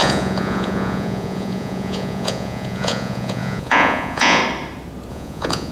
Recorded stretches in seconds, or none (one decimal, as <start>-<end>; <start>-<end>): 4.4-5.1